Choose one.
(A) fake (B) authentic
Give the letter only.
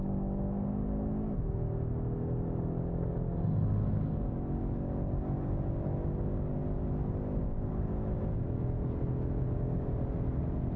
B